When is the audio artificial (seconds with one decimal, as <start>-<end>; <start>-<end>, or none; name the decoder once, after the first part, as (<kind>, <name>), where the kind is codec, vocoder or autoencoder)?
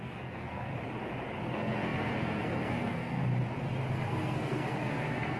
0.0-0.7 (codec, SNAC); 1.4-3.2; 3.9-5.4